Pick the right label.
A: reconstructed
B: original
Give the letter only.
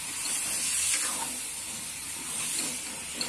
B